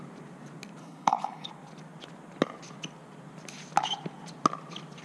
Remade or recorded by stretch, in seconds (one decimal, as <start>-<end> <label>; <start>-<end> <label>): 0.0-0.8 recorded; 0.8-1.5 remade; 1.5-5.0 recorded